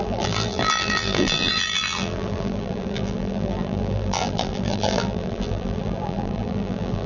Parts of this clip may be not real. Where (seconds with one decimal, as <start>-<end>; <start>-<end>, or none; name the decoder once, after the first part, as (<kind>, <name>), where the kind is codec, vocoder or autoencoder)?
0.0-7.1 (vocoder, BigVGAN v2)